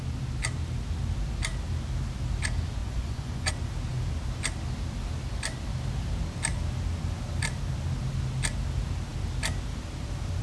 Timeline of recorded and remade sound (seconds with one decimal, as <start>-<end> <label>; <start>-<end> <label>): 0.0-2.8 recorded; 2.8-3.5 remade; 3.5-10.4 recorded